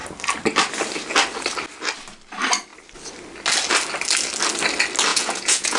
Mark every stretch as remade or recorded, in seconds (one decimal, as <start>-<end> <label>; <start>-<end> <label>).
0.0-5.1 recorded; 5.1-5.8 remade